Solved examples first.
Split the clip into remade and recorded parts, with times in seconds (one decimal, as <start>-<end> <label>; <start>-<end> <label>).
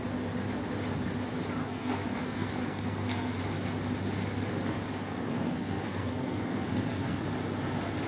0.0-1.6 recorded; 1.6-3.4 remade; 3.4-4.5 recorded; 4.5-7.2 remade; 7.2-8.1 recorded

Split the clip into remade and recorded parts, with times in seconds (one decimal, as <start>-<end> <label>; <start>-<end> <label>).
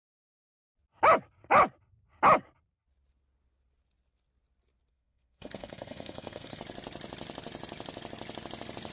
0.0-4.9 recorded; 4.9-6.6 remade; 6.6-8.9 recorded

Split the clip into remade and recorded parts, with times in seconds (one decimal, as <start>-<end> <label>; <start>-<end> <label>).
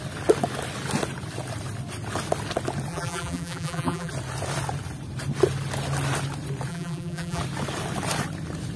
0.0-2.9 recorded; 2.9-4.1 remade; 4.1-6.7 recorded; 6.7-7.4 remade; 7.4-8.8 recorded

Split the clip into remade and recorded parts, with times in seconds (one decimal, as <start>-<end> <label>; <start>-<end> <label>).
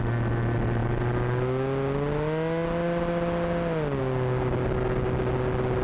0.0-5.8 recorded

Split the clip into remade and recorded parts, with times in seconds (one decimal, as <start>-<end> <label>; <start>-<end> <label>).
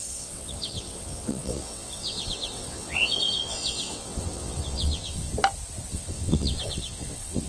0.0-5.3 remade; 5.3-5.9 recorded; 5.9-7.5 remade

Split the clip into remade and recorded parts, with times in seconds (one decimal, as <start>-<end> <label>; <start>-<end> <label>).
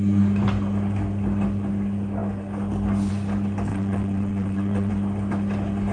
0.0-3.7 recorded; 3.7-4.9 remade; 4.9-5.9 recorded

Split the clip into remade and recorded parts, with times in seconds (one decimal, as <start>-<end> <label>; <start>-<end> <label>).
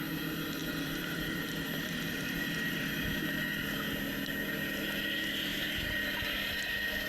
0.0-0.6 recorded; 0.6-2.9 remade; 2.9-7.1 recorded